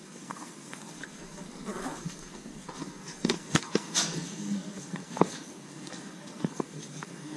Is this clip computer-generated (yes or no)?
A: yes